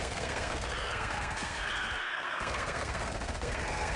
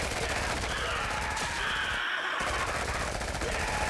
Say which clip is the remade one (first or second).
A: first